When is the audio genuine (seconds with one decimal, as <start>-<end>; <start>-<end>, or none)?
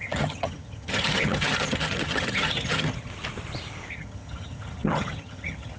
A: 3.1-3.9